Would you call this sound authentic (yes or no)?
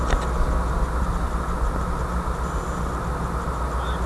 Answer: yes